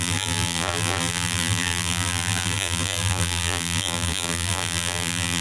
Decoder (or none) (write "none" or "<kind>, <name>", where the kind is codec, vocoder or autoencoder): vocoder, BigVGAN v2